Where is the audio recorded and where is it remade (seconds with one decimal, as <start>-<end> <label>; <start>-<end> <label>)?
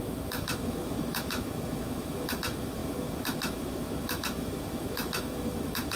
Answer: 0.0-6.0 remade